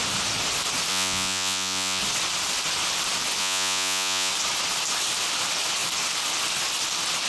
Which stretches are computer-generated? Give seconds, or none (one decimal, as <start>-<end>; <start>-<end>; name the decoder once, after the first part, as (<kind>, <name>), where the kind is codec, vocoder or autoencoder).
0.9-2.0 (vocoder, Vocos); 3.4-4.3